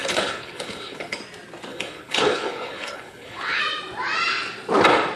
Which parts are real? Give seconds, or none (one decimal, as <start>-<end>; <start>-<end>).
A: 1.2-1.7; 3.6-5.2